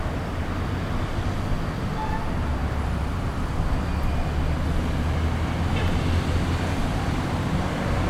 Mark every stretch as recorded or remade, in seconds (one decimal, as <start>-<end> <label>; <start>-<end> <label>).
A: 0.0-8.1 recorded